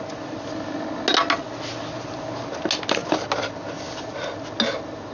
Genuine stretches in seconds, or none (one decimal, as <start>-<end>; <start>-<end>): 0.0-5.1